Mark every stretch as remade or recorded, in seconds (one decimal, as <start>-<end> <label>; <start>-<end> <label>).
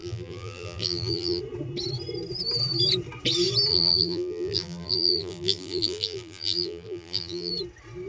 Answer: 0.0-1.4 remade; 1.4-3.7 recorded; 3.7-7.5 remade; 7.5-8.1 recorded